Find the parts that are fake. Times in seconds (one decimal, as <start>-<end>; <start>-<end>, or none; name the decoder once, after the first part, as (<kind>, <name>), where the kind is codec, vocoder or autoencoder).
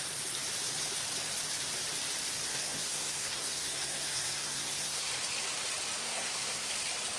2.5-5.1 (codec, SNAC); 6.0-6.7